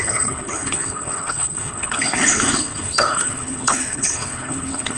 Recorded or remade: remade